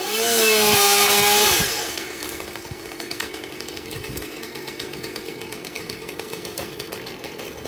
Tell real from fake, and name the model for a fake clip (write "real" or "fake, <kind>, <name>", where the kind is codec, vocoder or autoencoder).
fake, codec, SNAC